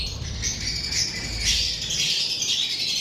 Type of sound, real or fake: real